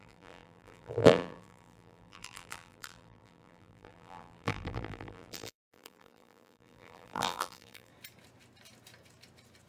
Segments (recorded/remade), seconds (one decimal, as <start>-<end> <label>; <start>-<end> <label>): 0.0-7.9 remade; 7.9-9.7 recorded